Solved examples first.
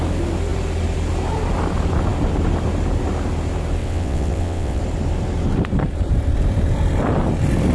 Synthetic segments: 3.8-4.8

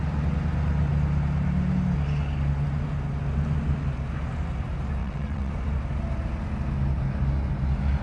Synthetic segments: 5.0-5.5

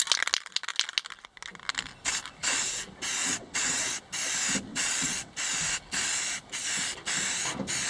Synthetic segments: 3.2-4.0; 4.7-5.3

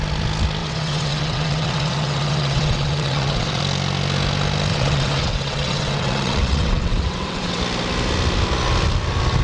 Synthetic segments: 0.6-3.6; 4.7-7.6

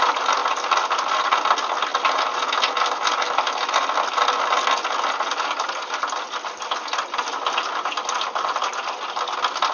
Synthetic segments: none

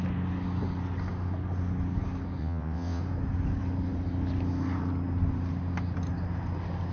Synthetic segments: 2.4-3.0